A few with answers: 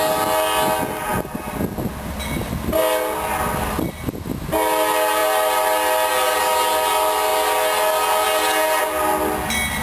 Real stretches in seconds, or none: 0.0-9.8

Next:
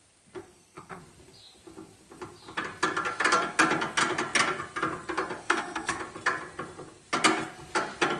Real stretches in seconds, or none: 0.0-0.4; 1.0-5.4; 6.0-8.2

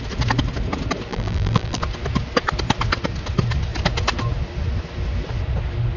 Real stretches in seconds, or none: 0.0-1.1; 1.8-6.0

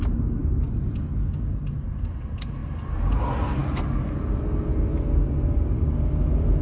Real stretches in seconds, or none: 0.0-6.6